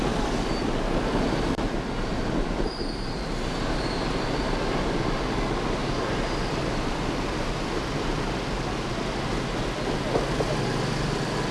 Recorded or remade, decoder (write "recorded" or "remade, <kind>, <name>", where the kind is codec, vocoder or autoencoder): recorded